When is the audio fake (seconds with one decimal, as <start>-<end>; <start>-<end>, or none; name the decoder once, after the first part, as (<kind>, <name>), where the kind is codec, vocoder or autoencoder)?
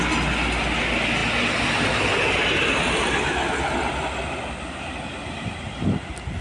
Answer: none